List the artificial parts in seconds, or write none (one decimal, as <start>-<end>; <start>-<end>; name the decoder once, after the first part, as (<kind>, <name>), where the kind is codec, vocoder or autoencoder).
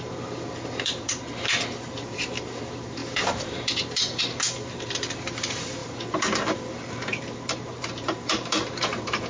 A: 0.0-9.3 (vocoder, BigVGAN v2)